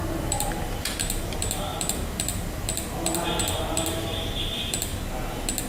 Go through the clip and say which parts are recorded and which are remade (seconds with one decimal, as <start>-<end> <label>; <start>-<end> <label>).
0.0-4.9 remade; 4.9-5.7 recorded